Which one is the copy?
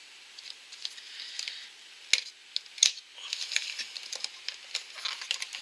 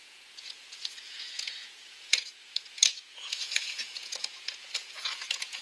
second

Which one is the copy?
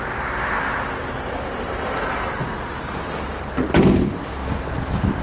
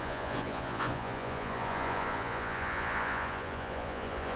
second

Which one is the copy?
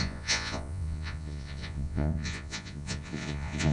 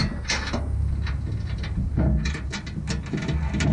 first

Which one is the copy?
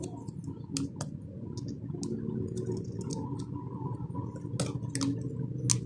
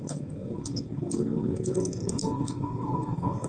second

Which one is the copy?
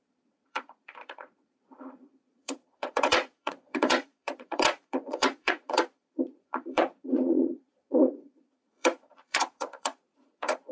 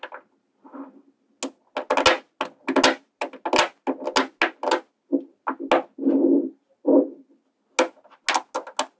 first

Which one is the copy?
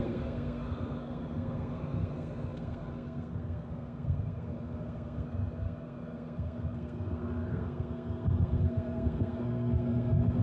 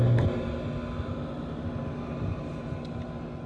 first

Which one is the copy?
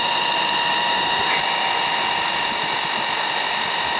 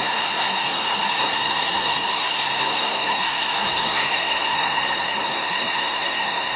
second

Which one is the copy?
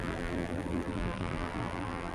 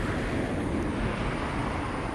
first